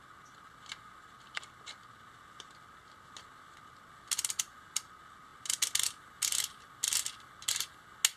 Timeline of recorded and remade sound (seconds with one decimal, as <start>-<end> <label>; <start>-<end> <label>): 0.0-8.2 recorded